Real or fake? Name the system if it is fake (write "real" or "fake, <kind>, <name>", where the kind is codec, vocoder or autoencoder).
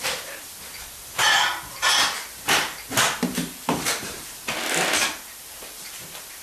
fake, vocoder, BigVGAN v2